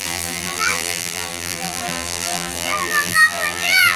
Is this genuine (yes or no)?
no